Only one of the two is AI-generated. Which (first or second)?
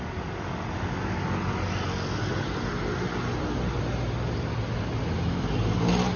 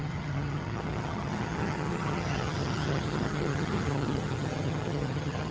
second